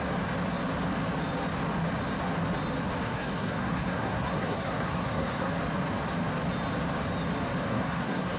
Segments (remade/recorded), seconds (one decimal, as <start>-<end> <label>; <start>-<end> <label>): 0.0-3.0 recorded; 3.0-5.5 remade; 5.5-7.7 recorded; 7.7-8.4 remade